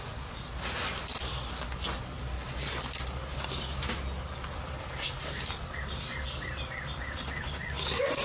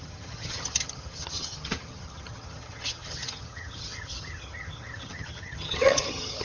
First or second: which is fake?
second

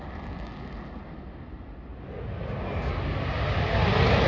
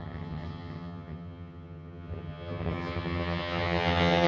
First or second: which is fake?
second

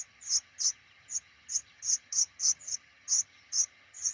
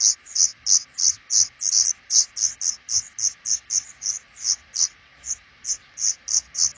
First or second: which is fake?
first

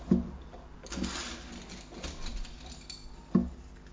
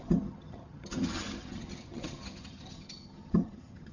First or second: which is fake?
second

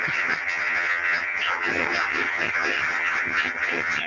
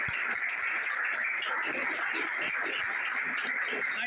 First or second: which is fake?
first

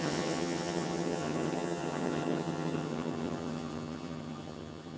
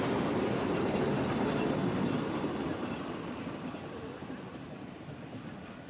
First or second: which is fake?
first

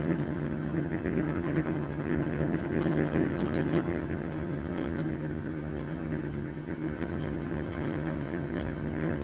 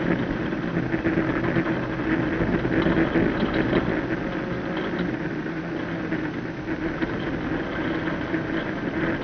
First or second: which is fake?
first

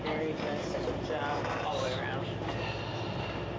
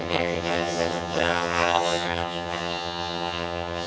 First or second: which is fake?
second